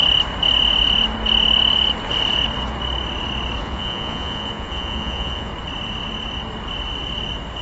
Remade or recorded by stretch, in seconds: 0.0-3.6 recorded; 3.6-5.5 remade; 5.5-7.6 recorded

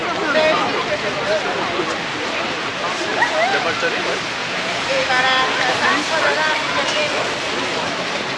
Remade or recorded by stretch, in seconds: 0.0-4.4 recorded; 4.4-5.1 remade; 5.1-8.4 recorded

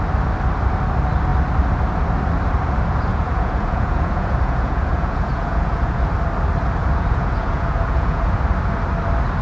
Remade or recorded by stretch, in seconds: 0.0-3.1 recorded; 3.1-6.1 remade; 6.1-6.8 recorded; 6.8-8.4 remade; 8.4-9.4 recorded

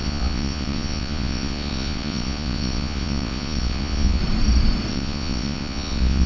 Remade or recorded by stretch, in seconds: 0.0-4.2 remade; 4.2-4.9 recorded; 4.9-6.3 remade

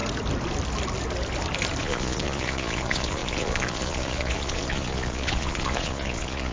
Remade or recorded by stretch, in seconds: 0.0-1.8 recorded; 1.8-6.5 remade

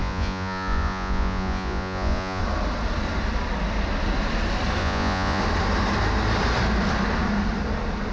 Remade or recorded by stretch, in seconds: 0.0-2.4 remade; 2.4-4.8 recorded; 4.8-5.4 remade; 5.4-8.1 recorded

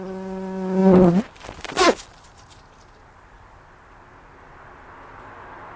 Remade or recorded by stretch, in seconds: 0.0-5.8 recorded